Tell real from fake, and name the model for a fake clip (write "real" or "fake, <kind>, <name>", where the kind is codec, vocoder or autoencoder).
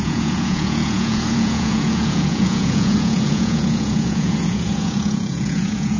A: fake, vocoder, Vocos